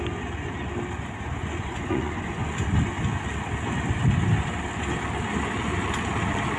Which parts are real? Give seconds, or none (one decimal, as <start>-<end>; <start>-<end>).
0.0-1.4; 2.5-6.6